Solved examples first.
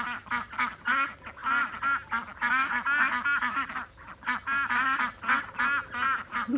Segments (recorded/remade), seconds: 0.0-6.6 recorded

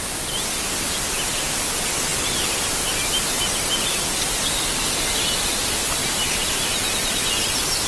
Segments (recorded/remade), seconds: 0.0-6.0 recorded; 6.0-6.6 remade; 6.6-7.9 recorded

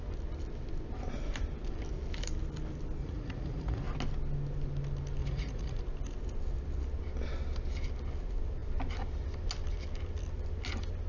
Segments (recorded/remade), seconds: 0.0-3.0 recorded; 3.0-3.8 remade; 3.8-5.2 recorded; 5.2-5.8 remade; 5.8-11.1 recorded

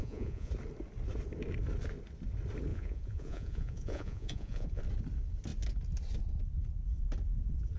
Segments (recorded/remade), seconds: 0.0-0.5 remade; 0.5-2.7 recorded; 2.7-4.8 remade; 4.8-7.8 recorded